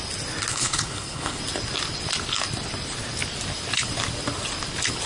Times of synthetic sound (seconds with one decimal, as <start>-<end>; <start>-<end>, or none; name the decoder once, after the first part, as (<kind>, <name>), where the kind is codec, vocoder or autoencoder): 0.5-1.4 (codec, HILCodec)